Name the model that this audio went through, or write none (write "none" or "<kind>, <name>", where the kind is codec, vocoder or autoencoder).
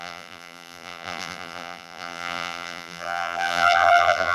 vocoder, BigVGAN v2